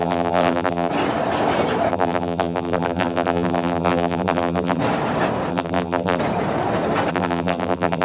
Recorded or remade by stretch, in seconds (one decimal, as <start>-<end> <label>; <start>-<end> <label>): 0.0-0.9 remade; 0.9-1.9 recorded; 1.9-4.8 remade; 4.8-5.5 recorded; 5.5-6.2 remade; 6.2-7.1 recorded; 7.1-8.0 remade